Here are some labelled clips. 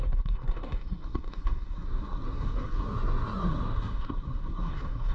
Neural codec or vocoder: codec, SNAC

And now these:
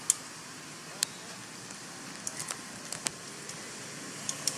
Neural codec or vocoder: none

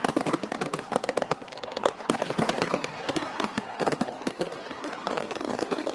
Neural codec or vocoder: codec, SNAC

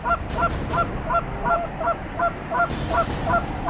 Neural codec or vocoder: none